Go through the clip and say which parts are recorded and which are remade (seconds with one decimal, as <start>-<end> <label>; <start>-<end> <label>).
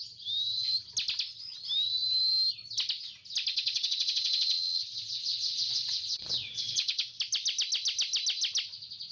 0.0-3.5 recorded; 3.5-7.2 remade; 7.2-9.1 recorded